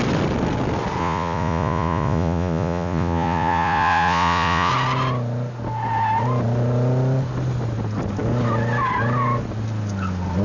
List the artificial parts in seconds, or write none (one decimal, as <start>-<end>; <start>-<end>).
1.0-4.7